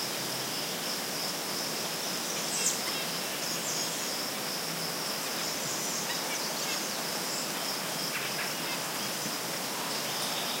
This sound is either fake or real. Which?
real